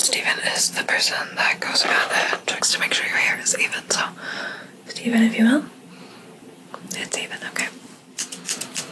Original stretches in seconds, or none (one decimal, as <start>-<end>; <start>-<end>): 0.0-8.9